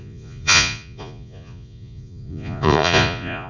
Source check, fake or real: fake